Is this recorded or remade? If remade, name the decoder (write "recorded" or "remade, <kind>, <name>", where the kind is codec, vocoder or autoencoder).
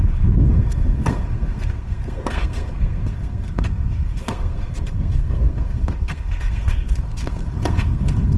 remade, codec, SNAC